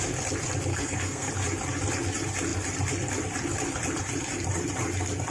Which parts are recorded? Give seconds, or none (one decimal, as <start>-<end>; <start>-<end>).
0.0-0.7; 1.3-5.3